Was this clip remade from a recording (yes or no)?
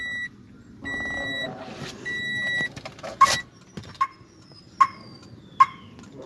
no